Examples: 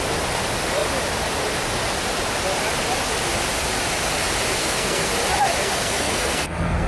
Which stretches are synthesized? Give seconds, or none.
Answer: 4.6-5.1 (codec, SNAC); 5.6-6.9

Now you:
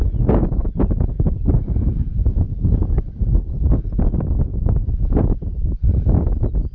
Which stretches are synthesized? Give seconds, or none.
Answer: 0.6-2.8 (vocoder, Vocos); 4.5-5.2

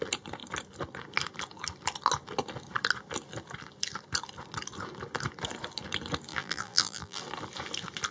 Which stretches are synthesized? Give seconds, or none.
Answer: 6.3-7.2 (vocoder, BigVGAN v2)